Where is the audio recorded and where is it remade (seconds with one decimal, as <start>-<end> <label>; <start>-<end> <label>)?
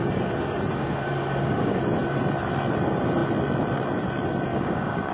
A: 0.0-0.8 recorded; 0.8-1.8 remade; 1.8-4.5 recorded; 4.5-5.1 remade